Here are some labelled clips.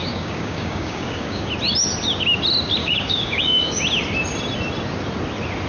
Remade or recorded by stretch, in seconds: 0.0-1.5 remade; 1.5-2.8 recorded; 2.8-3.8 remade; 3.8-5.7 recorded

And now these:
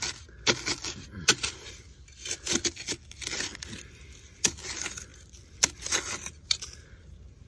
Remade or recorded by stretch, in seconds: 0.0-7.5 recorded